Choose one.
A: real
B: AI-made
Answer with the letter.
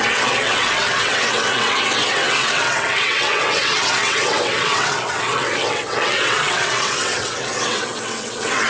B